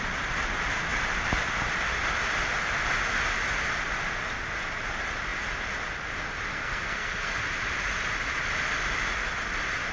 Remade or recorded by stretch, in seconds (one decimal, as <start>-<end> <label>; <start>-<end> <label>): 0.0-6.5 recorded; 6.5-7.4 remade; 7.4-9.9 recorded